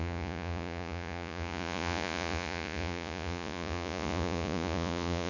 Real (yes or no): no